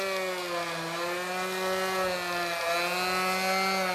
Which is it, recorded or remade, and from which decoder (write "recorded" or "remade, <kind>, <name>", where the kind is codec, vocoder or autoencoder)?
recorded